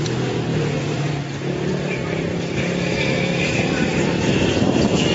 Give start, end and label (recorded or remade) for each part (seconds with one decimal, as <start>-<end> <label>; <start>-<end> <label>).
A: 0.0-0.5 recorded; 0.5-1.1 remade; 1.1-2.0 recorded; 2.0-3.5 remade; 3.5-3.9 recorded; 3.9-4.5 remade; 4.5-5.1 recorded